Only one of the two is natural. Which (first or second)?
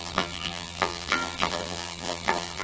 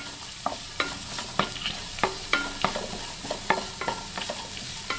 second